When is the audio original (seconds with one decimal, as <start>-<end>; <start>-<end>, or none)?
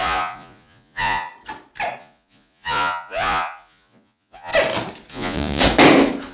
1.3-2.0; 4.5-5.1; 5.6-6.3